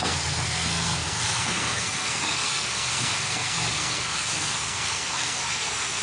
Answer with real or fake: fake